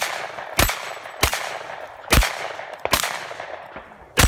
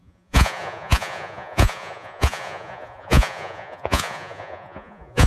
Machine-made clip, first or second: second